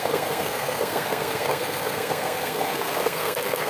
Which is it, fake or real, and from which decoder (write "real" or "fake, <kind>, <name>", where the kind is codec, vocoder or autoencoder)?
fake, codec, SNAC